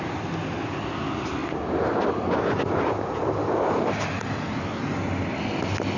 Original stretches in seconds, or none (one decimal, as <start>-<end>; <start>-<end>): 0.0-6.0